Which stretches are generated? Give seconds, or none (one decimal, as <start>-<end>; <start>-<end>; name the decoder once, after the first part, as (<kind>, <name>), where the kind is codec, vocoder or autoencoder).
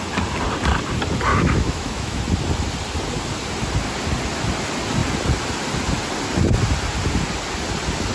1.3-2.2 (autoencoder, DAC-VAE)